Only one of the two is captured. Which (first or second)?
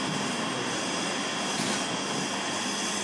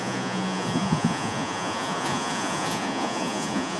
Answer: first